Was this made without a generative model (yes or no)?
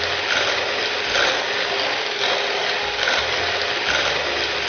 yes